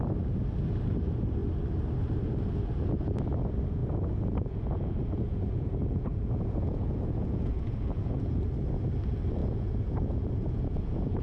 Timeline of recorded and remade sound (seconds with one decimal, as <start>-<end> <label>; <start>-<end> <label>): 0.0-3.8 recorded; 3.8-8.4 remade; 8.4-9.4 recorded; 9.4-11.2 remade